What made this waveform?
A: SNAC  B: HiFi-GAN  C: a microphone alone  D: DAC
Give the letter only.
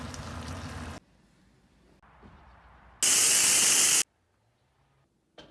C